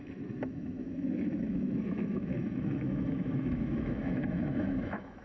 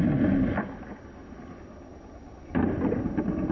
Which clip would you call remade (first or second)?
first